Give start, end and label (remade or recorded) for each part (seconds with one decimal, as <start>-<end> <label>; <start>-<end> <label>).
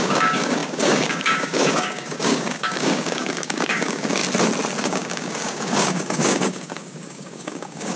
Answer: 0.0-4.2 remade; 4.2-4.8 recorded; 4.8-8.0 remade